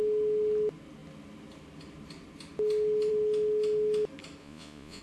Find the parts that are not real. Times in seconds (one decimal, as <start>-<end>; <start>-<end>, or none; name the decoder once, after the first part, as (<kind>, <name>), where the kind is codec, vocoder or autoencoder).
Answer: 4.4-5.0 (vocoder, Vocos)